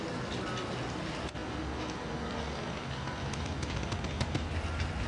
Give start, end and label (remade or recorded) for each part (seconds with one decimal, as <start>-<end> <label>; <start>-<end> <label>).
0.0-5.1 recorded